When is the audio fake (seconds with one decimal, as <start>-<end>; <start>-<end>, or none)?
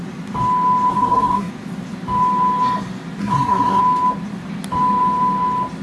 0.9-1.5; 3.2-3.8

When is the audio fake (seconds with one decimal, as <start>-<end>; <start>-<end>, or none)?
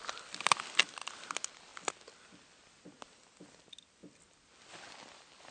none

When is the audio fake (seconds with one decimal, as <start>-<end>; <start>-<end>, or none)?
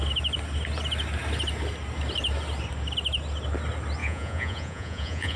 4.0-5.4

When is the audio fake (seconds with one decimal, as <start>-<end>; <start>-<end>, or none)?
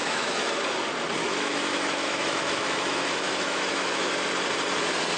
0.0-0.6; 1.2-4.1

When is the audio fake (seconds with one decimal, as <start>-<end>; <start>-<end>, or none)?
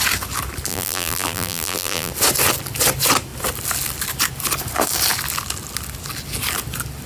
0.7-2.1